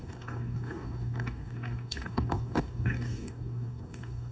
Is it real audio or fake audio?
fake